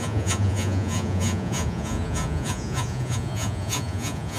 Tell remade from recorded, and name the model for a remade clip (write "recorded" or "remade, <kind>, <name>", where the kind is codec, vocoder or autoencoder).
remade, vocoder, Vocos